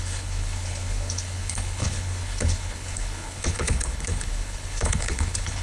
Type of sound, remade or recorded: remade